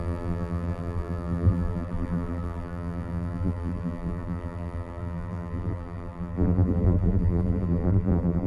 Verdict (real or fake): fake